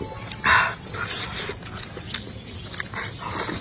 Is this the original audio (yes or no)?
yes